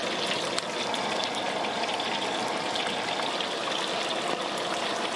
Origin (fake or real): real